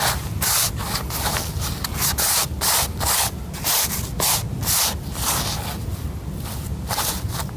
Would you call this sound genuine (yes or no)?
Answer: yes